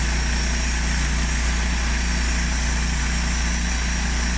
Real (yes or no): yes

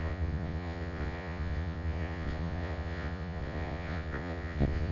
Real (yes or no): no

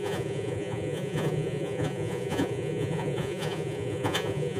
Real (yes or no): no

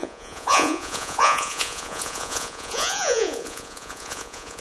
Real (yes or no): no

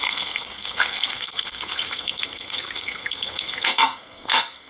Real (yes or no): no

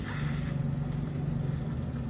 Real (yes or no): yes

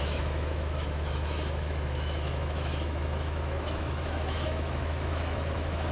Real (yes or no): no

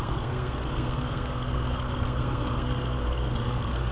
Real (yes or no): no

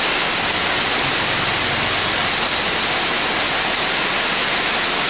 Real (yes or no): yes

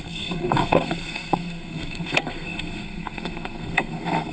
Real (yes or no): no